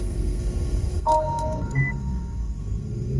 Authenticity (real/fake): fake